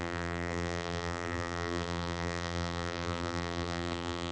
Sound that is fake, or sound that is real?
fake